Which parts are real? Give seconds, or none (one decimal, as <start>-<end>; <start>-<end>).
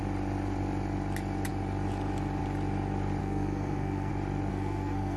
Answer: 0.0-3.2; 4.1-4.5